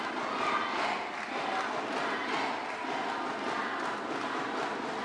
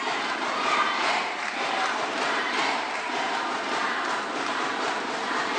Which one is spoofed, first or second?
second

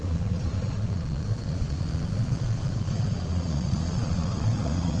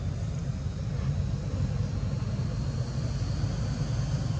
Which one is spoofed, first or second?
first